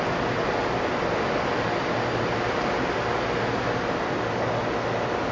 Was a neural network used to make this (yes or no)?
no